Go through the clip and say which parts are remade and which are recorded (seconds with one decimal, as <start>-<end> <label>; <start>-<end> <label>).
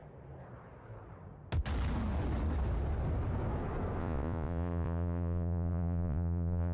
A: 0.0-4.0 recorded; 4.0-6.7 remade